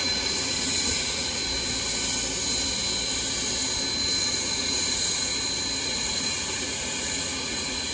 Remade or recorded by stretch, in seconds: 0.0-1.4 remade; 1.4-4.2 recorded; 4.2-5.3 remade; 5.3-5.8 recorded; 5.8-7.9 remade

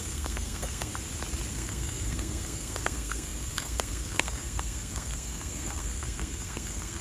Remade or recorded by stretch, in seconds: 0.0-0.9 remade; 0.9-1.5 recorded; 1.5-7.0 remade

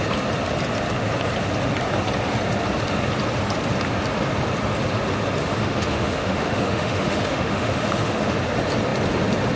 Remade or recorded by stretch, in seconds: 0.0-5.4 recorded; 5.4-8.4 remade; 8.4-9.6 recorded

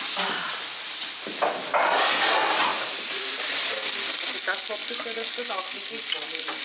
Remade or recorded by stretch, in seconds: 0.0-2.7 recorded; 2.7-3.7 remade; 3.7-6.6 recorded

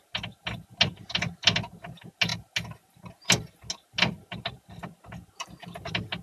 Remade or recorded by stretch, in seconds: 0.0-6.2 recorded

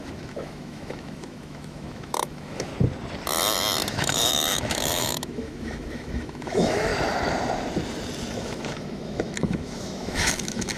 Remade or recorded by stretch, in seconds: 0.0-2.7 remade; 2.7-3.9 recorded; 3.9-6.9 remade; 6.9-8.3 recorded; 8.3-10.8 remade

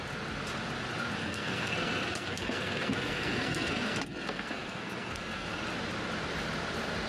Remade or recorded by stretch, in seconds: 0.0-1.2 recorded; 1.2-5.5 remade; 5.5-7.1 recorded

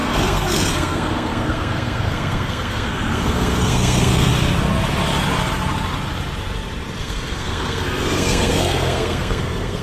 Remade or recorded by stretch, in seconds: 0.0-4.3 remade; 4.3-7.0 recorded; 7.0-9.8 remade